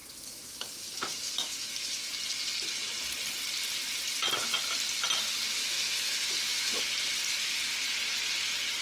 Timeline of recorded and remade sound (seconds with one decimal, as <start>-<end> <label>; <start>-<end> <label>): 0.0-2.1 remade; 2.1-5.6 recorded; 5.6-6.8 remade; 6.8-8.8 recorded